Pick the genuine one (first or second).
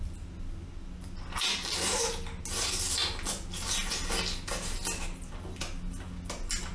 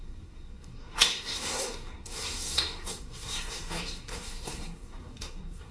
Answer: first